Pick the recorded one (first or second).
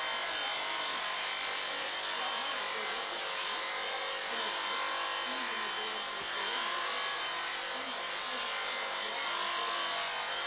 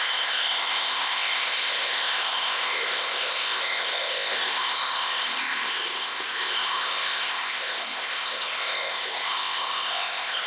first